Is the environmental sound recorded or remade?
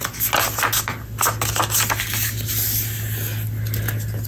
recorded